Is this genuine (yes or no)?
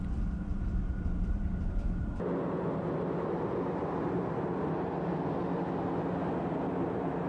yes